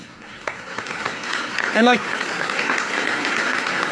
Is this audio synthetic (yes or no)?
yes